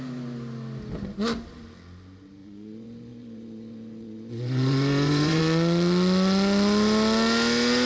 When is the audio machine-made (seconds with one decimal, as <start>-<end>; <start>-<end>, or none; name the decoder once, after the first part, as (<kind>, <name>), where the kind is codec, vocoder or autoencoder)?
2.4-5.4 (vocoder, Vocos)